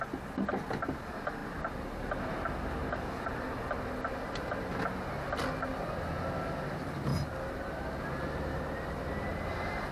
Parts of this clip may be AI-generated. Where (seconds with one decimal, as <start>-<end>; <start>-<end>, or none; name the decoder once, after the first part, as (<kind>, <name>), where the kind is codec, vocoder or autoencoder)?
none